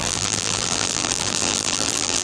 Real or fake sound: fake